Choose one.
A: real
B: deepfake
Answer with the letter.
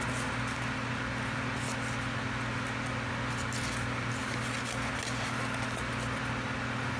A